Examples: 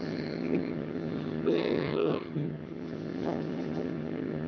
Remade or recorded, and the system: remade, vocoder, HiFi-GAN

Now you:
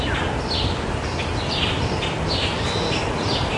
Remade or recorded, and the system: recorded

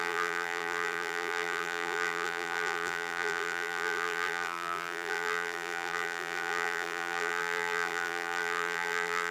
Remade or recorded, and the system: remade, vocoder, BigVGAN v2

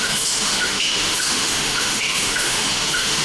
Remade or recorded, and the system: remade, autoencoder, DAC-VAE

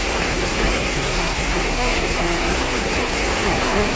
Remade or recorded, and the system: remade, codec, SNAC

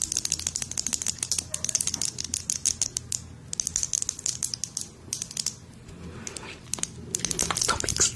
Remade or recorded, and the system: recorded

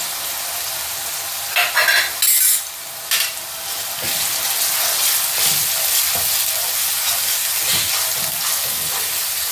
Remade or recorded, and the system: recorded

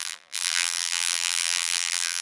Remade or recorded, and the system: remade, vocoder, BigVGAN v2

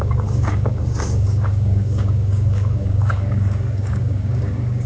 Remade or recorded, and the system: remade, codec, DAC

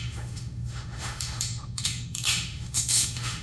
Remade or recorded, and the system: remade, autoencoder, DAC-VAE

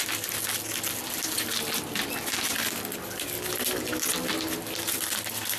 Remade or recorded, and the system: recorded